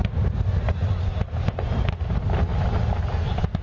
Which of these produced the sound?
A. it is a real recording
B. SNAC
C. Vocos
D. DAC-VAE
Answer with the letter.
A